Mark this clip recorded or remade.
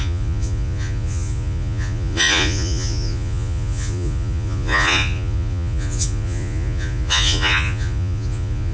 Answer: remade